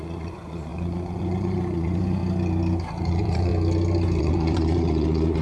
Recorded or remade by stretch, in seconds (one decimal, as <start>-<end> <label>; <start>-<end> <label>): 0.0-2.2 remade; 2.2-3.0 recorded; 3.0-3.5 remade; 3.5-4.2 recorded; 4.2-5.4 remade